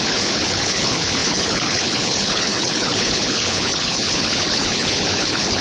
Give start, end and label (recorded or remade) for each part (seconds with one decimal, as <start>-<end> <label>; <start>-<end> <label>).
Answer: 0.0-5.6 remade